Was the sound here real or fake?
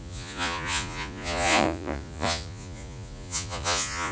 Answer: fake